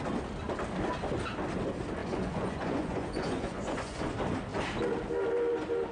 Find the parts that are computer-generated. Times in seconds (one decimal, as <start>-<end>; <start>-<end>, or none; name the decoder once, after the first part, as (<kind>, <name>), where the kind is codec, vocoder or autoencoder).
2.0-4.1 (vocoder, Vocos)